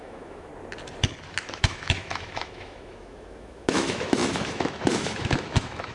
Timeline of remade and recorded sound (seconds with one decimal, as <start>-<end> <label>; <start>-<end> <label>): 0.0-0.5 remade; 0.5-1.4 recorded; 1.4-5.9 remade